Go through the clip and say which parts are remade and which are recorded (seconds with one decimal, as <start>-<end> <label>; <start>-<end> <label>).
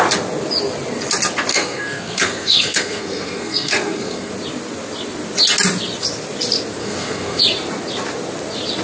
0.0-1.5 recorded; 1.5-4.3 remade; 4.3-6.8 recorded; 6.8-7.4 remade; 7.4-8.8 recorded